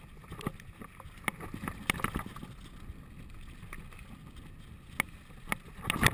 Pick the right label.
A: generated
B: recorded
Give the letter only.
B